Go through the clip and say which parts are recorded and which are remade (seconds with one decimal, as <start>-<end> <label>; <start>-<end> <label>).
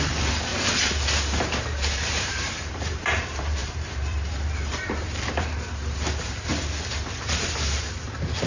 0.0-0.5 remade; 0.5-1.4 recorded; 1.4-6.5 remade; 6.5-7.3 recorded; 7.3-8.5 remade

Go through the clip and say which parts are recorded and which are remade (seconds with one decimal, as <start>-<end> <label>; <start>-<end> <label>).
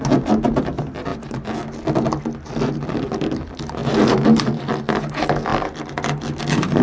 0.0-3.8 recorded; 3.8-4.8 remade; 4.8-6.8 recorded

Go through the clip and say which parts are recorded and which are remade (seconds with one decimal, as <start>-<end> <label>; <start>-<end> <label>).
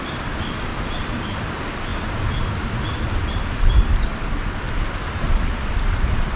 0.0-0.7 recorded; 0.7-1.2 remade; 1.2-6.4 recorded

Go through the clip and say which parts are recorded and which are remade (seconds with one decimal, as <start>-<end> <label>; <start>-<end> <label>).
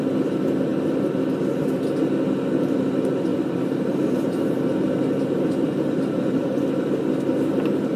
0.0-3.3 recorded; 3.3-6.6 remade; 6.6-8.0 recorded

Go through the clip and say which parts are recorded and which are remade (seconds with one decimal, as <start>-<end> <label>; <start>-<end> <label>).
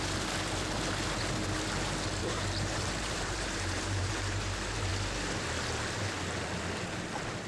0.0-2.2 recorded; 2.2-4.1 remade; 4.1-7.5 recorded